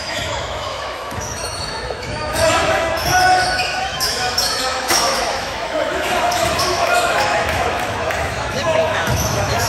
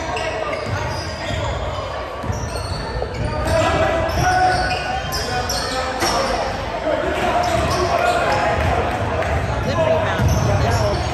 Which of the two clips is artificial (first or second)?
first